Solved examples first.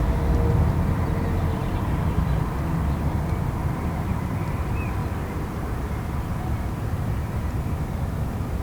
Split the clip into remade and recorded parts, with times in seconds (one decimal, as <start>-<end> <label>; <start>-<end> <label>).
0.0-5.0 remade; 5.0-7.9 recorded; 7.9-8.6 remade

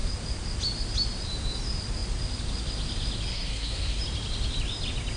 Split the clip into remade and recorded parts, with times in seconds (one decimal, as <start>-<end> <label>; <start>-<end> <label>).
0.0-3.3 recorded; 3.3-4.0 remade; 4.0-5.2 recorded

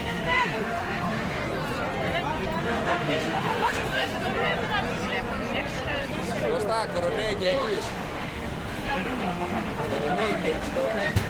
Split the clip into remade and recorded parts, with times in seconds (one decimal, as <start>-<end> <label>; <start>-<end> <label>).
0.0-1.4 remade; 1.4-2.6 recorded; 2.6-4.1 remade; 4.1-7.4 recorded; 7.4-11.3 remade

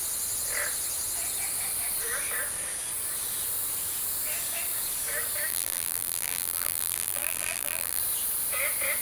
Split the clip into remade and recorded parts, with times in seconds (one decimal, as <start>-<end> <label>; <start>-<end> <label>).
0.0-5.5 recorded; 5.5-8.0 remade; 8.0-9.0 recorded

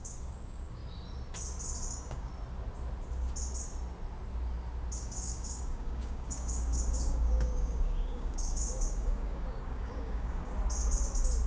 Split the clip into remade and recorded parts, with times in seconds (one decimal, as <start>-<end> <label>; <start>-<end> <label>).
0.0-0.8 remade; 0.8-1.9 recorded; 1.9-2.3 remade; 2.3-5.0 recorded; 5.0-10.5 remade; 10.5-11.5 recorded

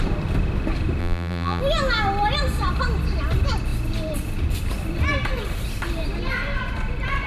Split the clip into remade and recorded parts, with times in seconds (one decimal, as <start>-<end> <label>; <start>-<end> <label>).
0.0-1.0 recorded; 1.0-1.6 remade; 1.6-7.3 recorded

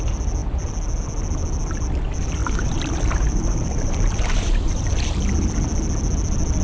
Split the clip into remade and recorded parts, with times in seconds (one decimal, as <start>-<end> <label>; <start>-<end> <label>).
0.0-2.4 recorded; 2.4-4.9 remade; 4.9-6.6 recorded